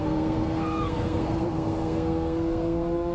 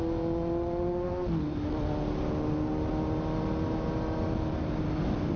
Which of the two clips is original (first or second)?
second